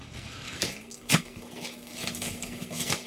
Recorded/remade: remade